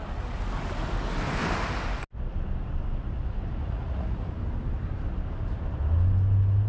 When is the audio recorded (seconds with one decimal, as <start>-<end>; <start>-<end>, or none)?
0.0-3.6; 4.3-6.7